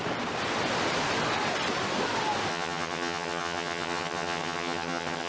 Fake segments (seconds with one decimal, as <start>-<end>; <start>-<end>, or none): 2.5-5.3